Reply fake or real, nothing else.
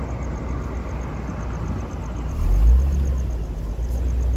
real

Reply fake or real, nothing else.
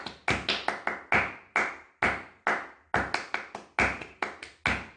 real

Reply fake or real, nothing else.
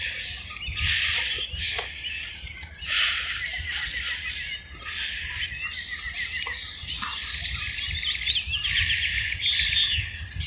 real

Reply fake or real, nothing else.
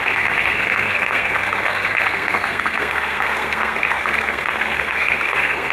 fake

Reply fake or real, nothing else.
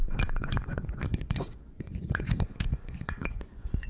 fake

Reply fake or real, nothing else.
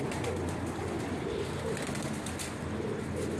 real